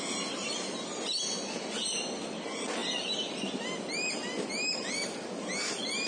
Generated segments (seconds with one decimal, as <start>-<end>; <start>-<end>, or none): none